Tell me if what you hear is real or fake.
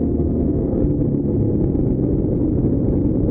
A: real